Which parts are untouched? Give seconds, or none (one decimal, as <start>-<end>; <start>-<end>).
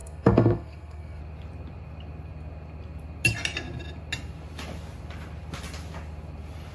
1.2-6.7